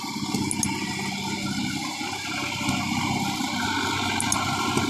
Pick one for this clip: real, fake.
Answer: real